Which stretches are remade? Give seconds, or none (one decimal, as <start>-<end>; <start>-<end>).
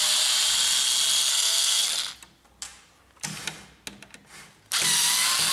1.3-1.8